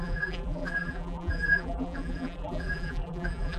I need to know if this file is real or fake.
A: fake